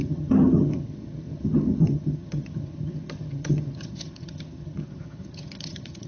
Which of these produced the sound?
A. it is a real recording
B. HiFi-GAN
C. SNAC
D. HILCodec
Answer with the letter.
B